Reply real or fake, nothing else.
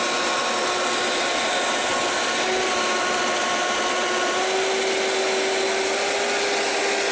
real